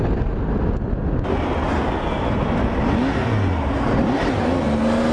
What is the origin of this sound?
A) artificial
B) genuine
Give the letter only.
B